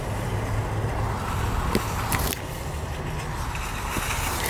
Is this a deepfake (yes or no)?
no